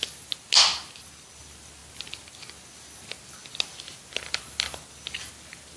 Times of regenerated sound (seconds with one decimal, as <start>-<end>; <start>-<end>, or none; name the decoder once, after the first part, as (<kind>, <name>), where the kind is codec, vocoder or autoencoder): none